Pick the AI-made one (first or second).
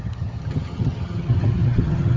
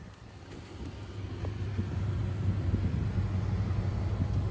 first